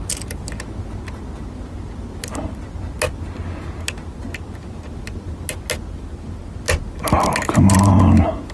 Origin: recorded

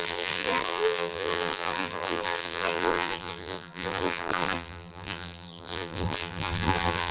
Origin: remade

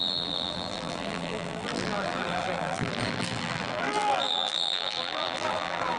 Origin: remade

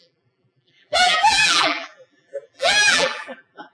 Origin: remade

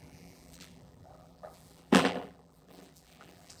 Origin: remade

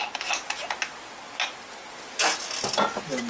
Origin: recorded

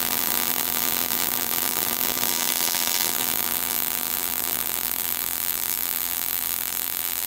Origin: remade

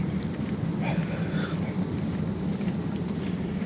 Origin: remade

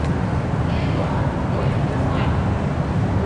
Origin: remade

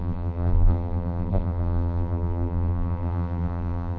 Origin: remade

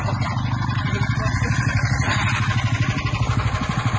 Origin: remade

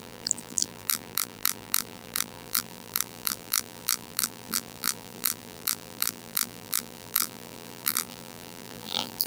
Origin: remade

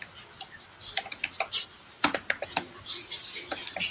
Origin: recorded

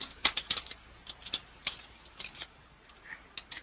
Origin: remade